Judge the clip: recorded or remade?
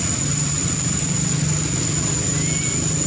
recorded